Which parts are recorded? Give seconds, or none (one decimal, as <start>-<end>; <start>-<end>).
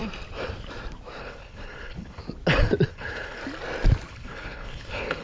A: 0.0-1.2; 2.2-2.9; 3.4-4.1